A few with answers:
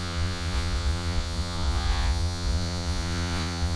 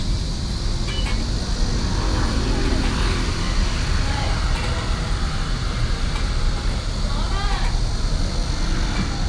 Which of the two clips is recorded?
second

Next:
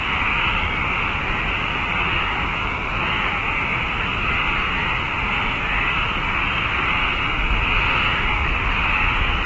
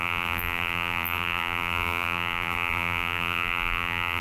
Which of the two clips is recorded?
first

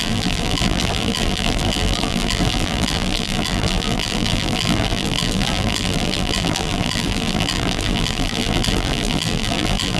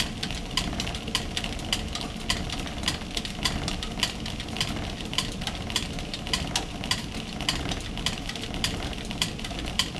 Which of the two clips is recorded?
second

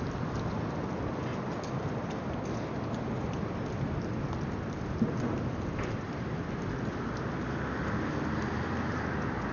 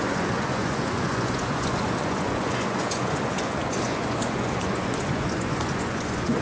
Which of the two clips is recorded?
first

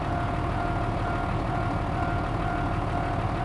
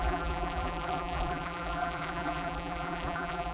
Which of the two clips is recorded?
first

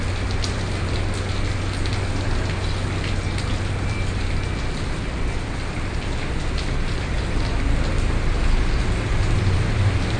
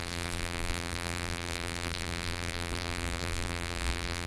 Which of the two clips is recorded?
first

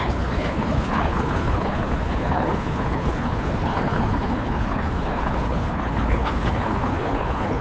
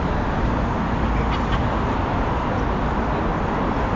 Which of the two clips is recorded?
second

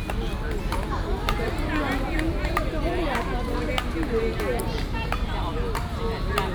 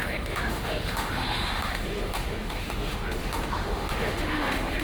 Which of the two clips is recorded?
first